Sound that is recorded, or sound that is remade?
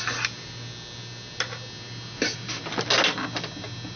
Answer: recorded